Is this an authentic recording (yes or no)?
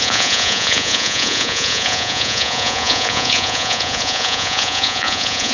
no